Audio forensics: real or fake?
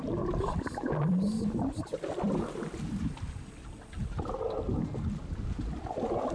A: real